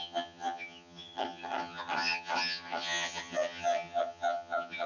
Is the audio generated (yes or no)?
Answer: yes